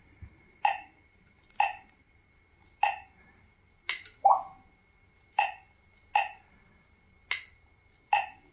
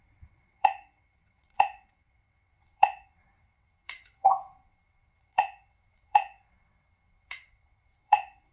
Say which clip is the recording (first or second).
first